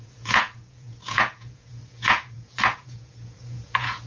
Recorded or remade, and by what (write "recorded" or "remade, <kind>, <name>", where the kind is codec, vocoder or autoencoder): remade, vocoder, Vocos